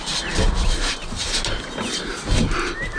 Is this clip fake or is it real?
real